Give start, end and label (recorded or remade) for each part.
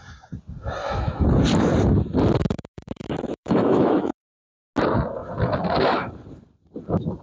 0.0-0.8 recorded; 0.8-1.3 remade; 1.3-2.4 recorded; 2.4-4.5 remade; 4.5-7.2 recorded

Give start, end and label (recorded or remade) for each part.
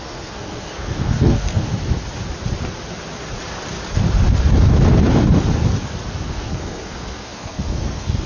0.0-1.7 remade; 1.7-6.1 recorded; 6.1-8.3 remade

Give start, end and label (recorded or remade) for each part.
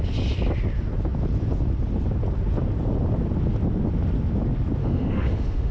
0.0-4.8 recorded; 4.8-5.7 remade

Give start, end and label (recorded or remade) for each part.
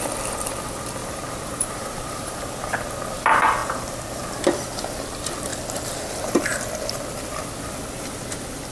0.0-1.0 recorded; 1.0-2.5 remade; 2.5-8.7 recorded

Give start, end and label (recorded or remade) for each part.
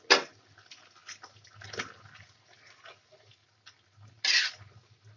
0.0-5.2 recorded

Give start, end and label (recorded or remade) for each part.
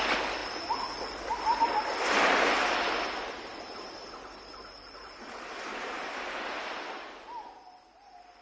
0.0-3.5 recorded; 3.5-6.6 remade; 6.6-8.4 recorded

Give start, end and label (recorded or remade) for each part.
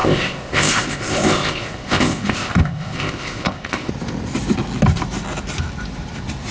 0.0-3.9 remade; 3.9-6.5 recorded